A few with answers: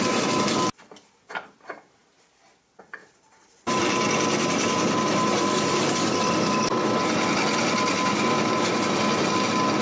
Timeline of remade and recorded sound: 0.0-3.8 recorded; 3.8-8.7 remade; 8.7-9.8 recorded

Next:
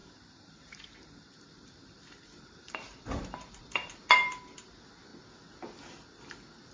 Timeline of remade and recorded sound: 0.0-5.1 remade; 5.1-6.7 recorded